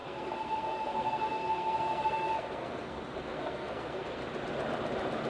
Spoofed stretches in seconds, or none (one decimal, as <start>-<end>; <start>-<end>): 0.0-4.2